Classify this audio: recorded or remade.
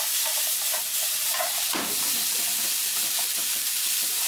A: remade